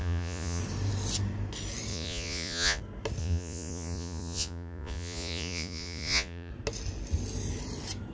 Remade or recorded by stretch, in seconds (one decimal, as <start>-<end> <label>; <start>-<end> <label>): 0.0-0.6 remade; 0.6-1.9 recorded; 1.9-2.8 remade; 2.8-3.2 recorded; 3.2-6.5 remade; 6.5-8.1 recorded